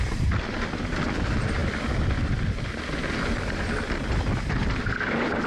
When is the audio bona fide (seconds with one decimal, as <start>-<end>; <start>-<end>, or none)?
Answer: 0.0-5.5